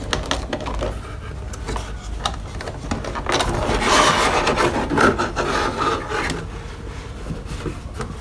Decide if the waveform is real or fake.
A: real